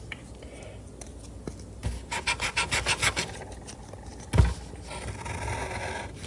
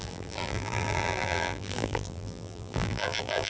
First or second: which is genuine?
first